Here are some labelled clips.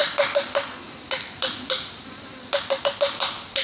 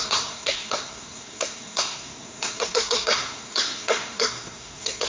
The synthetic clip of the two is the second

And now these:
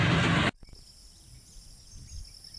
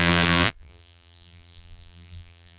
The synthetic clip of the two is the second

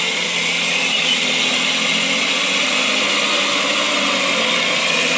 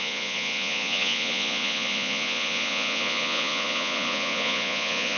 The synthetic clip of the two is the second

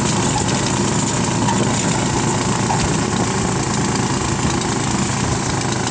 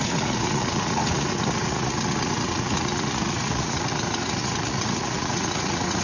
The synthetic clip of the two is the second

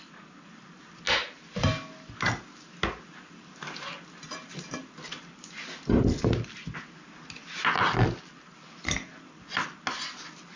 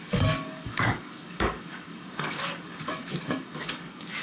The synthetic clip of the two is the second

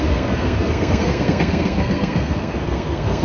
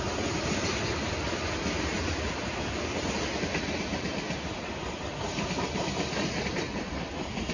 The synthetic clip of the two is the first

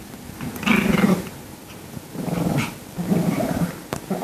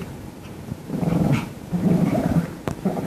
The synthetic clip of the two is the second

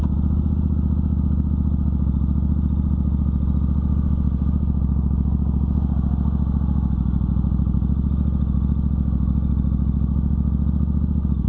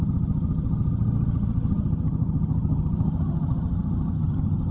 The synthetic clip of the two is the second